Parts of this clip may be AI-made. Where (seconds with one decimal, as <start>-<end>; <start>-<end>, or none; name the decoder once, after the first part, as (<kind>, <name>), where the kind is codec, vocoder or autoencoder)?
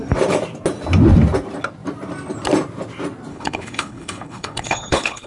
3.3-5.3 (codec, HILCodec)